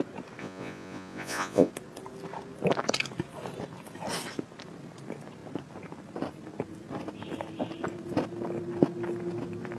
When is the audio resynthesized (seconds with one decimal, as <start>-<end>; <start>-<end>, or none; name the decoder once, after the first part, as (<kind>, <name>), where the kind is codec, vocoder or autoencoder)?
0.4-1.7 (vocoder, Vocos)